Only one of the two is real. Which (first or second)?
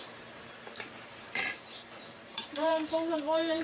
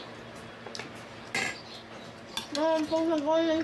second